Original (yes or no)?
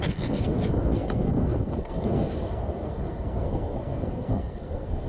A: no